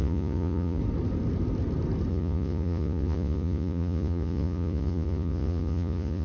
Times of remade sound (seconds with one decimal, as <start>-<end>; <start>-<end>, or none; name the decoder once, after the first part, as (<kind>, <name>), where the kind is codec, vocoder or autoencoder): 0.0-0.8 (vocoder, Vocos); 2.1-6.2